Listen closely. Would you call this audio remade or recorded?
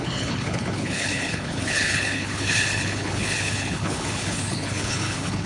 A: remade